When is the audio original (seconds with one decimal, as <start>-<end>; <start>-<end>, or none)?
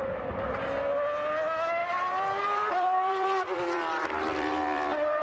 0.0-1.8